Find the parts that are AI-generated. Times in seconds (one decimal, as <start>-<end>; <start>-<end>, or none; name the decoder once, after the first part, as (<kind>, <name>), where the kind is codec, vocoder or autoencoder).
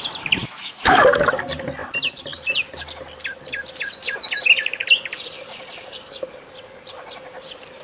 0.4-1.3 (autoencoder, DAC-VAE)